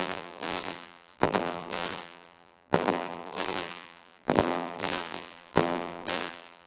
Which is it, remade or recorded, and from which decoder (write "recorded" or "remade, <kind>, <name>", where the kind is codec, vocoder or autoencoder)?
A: remade, vocoder, BigVGAN v2